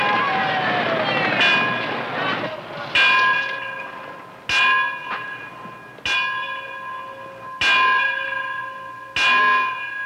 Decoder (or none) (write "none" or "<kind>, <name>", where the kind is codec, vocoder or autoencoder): none